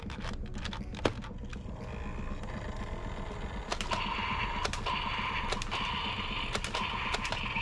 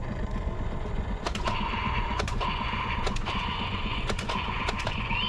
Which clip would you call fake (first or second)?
second